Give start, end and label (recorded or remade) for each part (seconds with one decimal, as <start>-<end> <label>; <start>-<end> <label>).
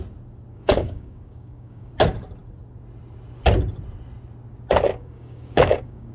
0.0-0.5 recorded; 0.5-1.9 remade; 1.9-4.9 recorded; 4.9-6.1 remade